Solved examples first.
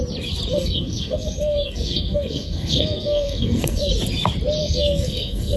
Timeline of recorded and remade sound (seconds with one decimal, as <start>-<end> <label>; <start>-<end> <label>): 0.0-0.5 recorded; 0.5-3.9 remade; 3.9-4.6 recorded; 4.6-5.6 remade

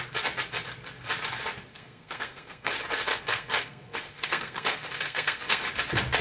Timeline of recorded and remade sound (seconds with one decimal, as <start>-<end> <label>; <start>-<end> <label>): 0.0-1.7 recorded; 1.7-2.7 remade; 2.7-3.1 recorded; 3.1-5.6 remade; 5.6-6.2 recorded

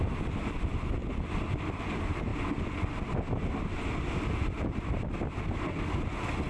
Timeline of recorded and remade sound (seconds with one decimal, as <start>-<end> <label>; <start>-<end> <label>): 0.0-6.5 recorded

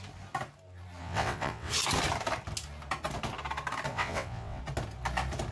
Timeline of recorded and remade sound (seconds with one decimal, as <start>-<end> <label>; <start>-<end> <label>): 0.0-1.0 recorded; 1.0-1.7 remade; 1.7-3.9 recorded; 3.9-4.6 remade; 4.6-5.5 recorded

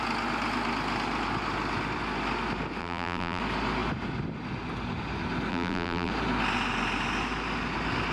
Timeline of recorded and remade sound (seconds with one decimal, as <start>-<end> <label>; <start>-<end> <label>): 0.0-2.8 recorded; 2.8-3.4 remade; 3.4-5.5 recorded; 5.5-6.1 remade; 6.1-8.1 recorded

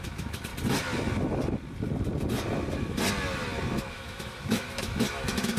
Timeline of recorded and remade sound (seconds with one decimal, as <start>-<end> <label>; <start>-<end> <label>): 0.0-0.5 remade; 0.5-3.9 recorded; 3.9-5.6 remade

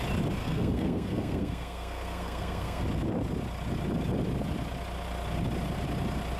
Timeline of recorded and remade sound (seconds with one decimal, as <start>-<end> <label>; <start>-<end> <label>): 0.0-0.4 recorded; 0.4-2.8 remade; 2.8-6.4 recorded